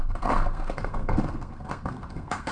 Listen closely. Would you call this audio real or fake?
fake